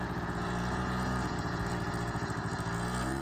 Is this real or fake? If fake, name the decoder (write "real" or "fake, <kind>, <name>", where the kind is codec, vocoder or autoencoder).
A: fake, vocoder, Vocos